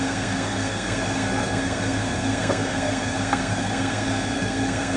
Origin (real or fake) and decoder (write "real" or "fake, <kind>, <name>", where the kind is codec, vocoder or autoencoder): fake, codec, SNAC